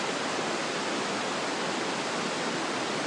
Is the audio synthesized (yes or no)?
no